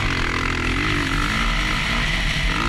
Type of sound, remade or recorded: recorded